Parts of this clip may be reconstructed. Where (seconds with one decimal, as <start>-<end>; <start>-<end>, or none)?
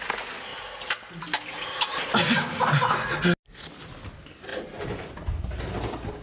0.5-1.2; 4.5-5.1